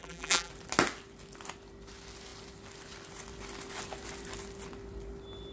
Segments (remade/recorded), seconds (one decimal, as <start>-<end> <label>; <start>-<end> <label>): 0.0-0.5 remade; 0.5-5.5 recorded